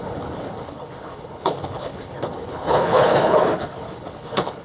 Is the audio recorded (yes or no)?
no